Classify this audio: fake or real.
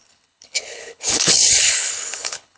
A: fake